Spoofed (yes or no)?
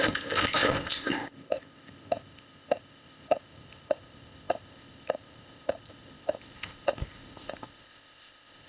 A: yes